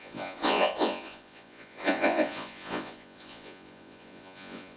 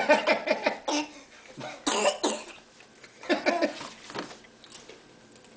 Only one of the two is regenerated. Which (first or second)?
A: first